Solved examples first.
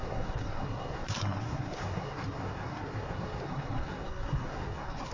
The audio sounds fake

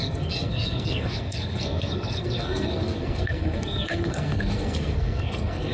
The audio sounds fake